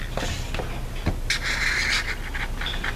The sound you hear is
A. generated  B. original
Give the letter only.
B